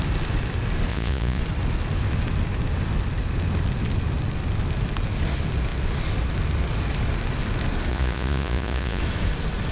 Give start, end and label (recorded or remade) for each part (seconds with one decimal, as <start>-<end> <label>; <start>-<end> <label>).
0.0-0.9 recorded; 0.9-1.4 remade; 1.4-7.9 recorded; 7.9-9.0 remade; 9.0-9.7 recorded